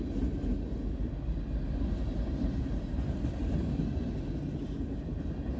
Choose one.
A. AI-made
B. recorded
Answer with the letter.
B